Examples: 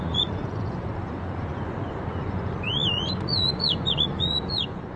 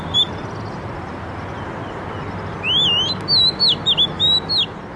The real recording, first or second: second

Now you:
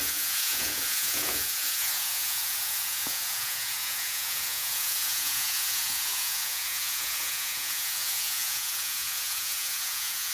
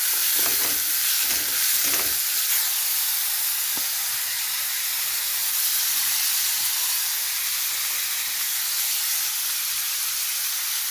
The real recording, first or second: second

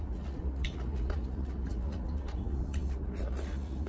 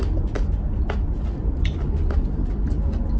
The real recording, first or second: second